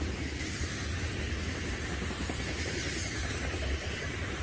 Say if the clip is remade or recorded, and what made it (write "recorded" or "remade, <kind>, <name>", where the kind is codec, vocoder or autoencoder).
remade, vocoder, BigVGAN v2